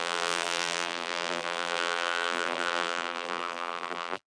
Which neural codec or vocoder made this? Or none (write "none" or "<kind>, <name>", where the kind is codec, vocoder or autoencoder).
vocoder, BigVGAN v2